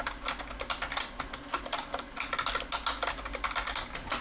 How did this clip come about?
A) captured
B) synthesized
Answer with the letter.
A